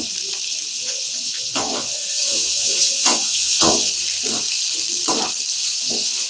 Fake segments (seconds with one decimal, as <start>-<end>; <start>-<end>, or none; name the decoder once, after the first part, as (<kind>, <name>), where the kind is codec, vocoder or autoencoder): 0.7-3.9 (vocoder, Vocos); 5.5-6.3